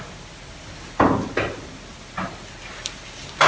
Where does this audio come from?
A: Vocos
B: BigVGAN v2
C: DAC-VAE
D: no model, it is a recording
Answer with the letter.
D